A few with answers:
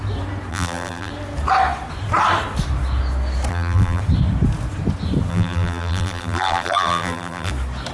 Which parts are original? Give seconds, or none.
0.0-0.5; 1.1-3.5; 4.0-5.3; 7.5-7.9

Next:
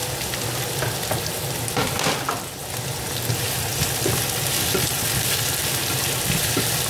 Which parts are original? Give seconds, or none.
0.0-6.9